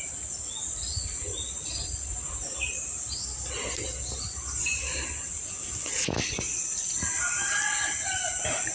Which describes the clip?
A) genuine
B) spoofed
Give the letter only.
A